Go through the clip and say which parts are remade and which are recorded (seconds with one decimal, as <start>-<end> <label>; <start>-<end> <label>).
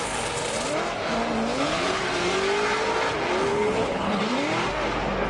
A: 0.0-1.5 recorded; 1.5-2.0 remade; 2.0-3.5 recorded; 3.5-4.2 remade; 4.2-5.3 recorded